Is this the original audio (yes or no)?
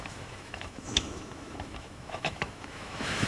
no